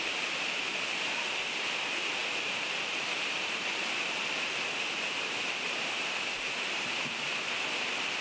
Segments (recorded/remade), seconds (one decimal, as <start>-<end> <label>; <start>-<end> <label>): 0.0-2.2 recorded; 2.2-6.9 remade; 6.9-8.2 recorded